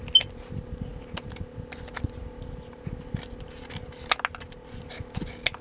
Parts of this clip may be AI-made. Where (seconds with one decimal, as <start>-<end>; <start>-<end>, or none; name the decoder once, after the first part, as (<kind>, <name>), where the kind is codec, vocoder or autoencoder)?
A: none

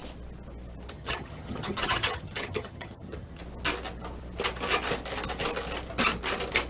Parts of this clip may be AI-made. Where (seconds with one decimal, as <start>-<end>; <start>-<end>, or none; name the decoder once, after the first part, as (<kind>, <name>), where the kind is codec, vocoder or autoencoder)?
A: 0.9-3.4 (vocoder, HiFi-GAN)

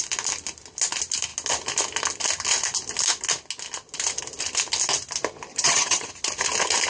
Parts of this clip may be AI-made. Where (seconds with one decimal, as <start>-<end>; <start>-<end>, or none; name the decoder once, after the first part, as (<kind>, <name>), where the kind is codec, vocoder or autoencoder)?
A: 5.5-6.1 (vocoder, HiFi-GAN)